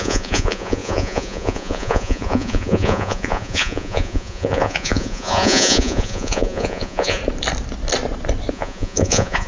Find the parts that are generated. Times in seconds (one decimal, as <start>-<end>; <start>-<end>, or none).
0.0-7.2; 8.5-9.5